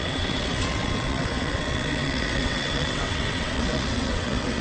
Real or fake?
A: fake